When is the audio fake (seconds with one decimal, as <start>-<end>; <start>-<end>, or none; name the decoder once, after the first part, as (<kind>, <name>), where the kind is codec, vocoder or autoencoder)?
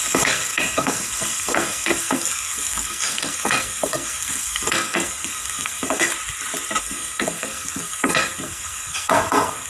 0.0-6.1 (codec, SNAC); 6.8-9.7